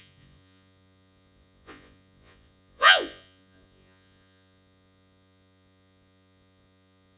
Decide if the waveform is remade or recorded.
remade